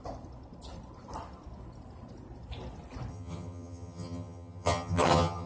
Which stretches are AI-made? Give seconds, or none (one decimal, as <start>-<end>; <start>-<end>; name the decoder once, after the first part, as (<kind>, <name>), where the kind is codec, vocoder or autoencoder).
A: 3.1-5.5 (vocoder, HiFi-GAN)